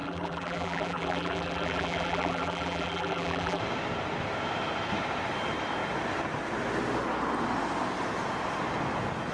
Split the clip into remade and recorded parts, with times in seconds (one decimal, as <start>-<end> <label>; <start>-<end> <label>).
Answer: 0.0-3.6 remade; 3.6-9.3 recorded